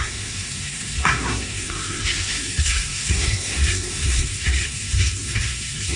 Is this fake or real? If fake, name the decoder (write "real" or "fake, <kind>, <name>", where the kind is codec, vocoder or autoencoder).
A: fake, codec, SNAC